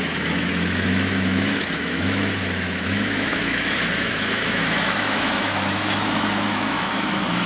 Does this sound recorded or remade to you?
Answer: remade